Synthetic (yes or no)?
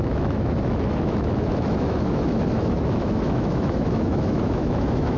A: yes